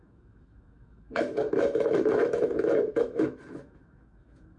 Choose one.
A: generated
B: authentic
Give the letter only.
A